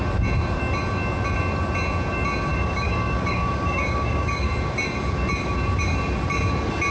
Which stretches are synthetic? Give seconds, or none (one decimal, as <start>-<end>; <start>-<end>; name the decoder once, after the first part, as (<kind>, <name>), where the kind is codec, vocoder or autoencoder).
2.5-4.5 (codec, DAC)